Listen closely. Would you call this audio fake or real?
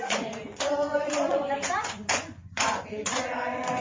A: fake